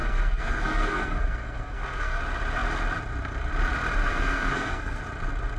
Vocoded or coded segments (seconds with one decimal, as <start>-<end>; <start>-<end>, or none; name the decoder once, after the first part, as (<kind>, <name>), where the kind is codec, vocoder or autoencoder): 0.0-2.2 (codec, SNAC); 4.0-5.0